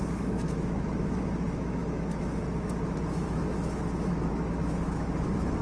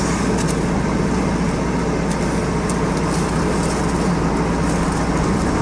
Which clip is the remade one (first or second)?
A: first